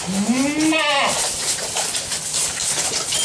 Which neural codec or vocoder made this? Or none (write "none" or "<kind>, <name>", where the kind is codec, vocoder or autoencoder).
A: none